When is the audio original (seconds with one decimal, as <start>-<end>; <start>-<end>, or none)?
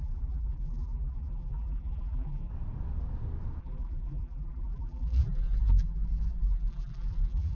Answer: 2.5-3.6